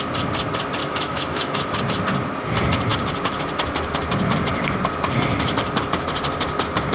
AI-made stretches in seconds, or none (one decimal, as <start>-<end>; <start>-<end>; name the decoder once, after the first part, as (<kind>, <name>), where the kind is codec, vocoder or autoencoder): 0.8-1.8 (autoencoder, DAC-VAE)